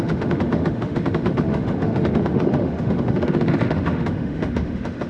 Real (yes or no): no